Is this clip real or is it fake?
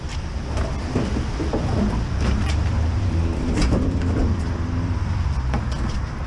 fake